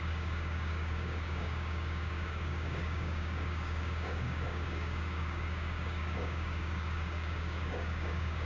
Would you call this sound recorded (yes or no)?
no